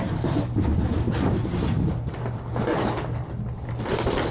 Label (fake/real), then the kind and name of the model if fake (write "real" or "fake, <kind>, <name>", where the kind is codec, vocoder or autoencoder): real